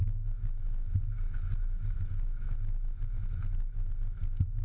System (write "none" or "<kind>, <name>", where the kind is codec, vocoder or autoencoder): none